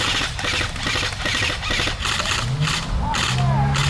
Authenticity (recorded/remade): recorded